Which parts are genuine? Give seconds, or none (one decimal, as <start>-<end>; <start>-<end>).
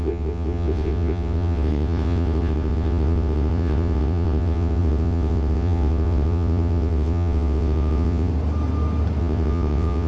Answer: 8.3-9.2